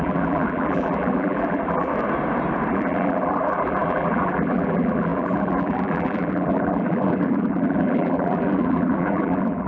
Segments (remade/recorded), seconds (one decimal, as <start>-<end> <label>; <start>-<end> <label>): 0.0-1.9 remade; 1.9-2.7 recorded; 2.7-9.7 remade